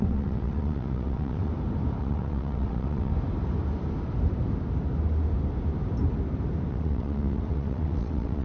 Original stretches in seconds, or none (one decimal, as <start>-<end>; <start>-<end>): 1.5-2.0; 3.1-6.7